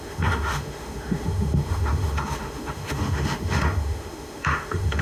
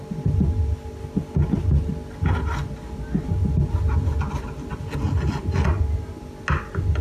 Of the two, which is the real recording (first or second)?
second